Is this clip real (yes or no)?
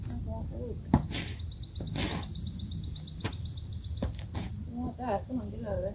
yes